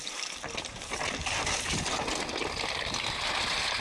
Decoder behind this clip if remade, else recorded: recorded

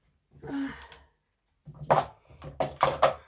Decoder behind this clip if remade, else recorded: recorded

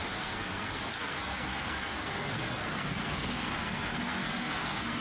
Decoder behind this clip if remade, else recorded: remade, codec, SNAC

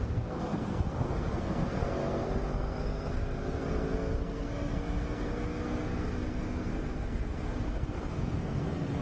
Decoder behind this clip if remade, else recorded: remade, codec, SNAC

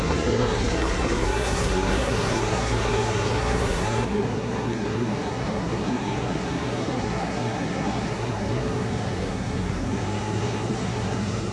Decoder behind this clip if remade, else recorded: remade, codec, SNAC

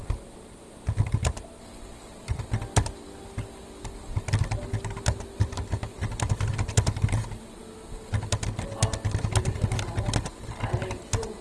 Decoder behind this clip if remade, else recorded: recorded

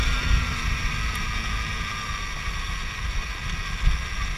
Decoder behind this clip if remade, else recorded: recorded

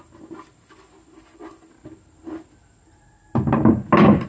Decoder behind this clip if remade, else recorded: recorded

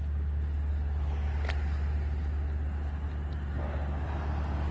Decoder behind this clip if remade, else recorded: recorded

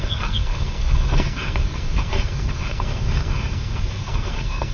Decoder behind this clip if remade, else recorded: remade, codec, SNAC